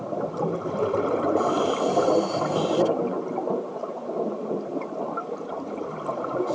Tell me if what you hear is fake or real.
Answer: fake